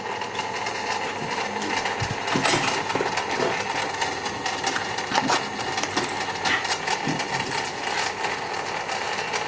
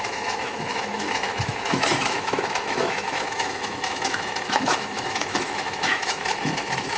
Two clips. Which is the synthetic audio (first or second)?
second